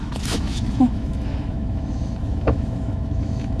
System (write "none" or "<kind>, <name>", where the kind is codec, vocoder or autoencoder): autoencoder, DAC-VAE